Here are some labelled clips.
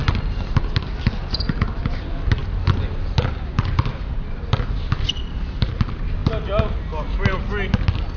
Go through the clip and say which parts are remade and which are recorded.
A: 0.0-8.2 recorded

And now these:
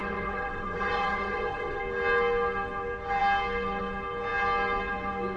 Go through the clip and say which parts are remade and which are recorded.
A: 0.0-1.8 remade; 1.8-5.4 recorded

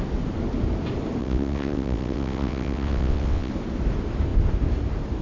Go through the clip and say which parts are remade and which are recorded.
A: 0.0-1.2 recorded; 1.2-3.5 remade; 3.5-5.2 recorded

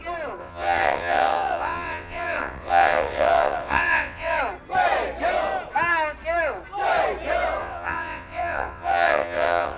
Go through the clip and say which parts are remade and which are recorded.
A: 0.0-0.4 recorded; 0.4-4.4 remade; 4.4-7.6 recorded; 7.6-9.8 remade

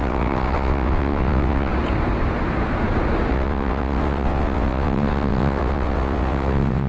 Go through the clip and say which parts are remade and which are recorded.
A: 0.0-1.7 remade; 1.7-3.3 recorded; 3.3-6.9 remade

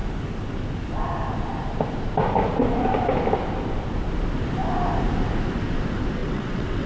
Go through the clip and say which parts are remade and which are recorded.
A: 0.0-6.2 recorded; 6.2-6.9 remade